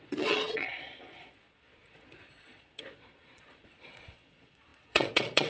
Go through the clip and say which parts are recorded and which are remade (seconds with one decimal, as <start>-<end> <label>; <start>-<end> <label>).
0.0-5.5 remade